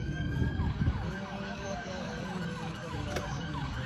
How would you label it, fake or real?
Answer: fake